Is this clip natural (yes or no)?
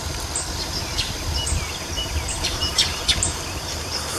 no